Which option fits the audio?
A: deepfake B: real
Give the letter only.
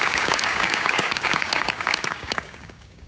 A